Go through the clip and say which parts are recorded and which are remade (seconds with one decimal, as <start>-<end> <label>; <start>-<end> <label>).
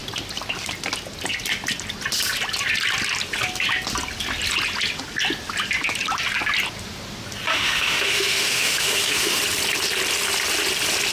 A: 0.0-7.5 recorded; 7.5-9.4 remade; 9.4-11.1 recorded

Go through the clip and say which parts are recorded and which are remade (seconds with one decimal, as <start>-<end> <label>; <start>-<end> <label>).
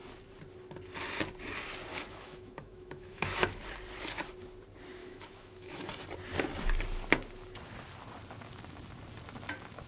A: 0.0-1.9 recorded; 1.9-3.6 remade; 3.6-5.0 recorded; 5.0-5.9 remade; 5.9-9.9 recorded